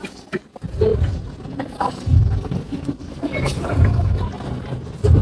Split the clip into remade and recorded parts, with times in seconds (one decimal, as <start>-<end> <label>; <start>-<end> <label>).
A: 0.0-5.2 recorded